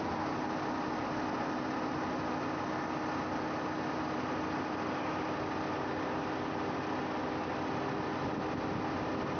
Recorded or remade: recorded